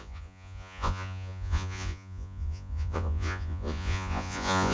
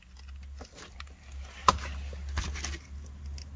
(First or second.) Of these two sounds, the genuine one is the second